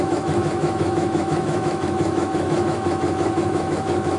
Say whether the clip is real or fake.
fake